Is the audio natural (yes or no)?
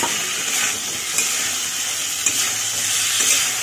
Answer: yes